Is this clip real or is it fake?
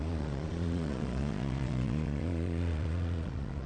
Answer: fake